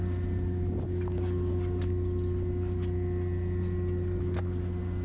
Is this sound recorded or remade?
recorded